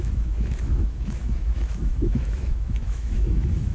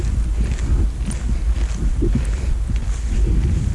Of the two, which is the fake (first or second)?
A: first